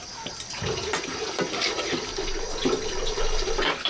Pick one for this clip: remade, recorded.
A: recorded